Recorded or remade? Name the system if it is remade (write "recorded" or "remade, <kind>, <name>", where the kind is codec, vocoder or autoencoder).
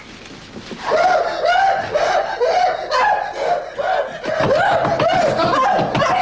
recorded